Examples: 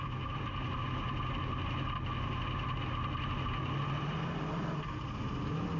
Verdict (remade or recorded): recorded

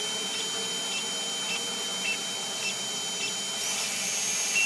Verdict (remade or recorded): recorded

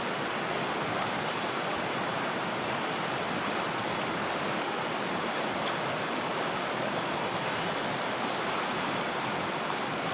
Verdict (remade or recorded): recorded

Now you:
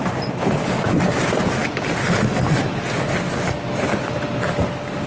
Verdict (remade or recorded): recorded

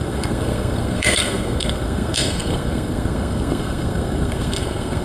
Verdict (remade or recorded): remade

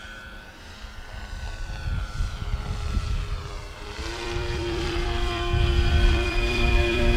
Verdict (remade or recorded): remade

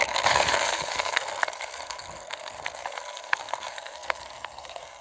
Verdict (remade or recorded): remade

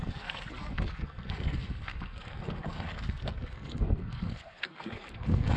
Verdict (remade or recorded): remade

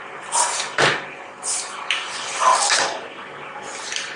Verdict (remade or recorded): recorded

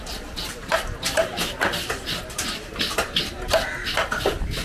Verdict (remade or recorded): recorded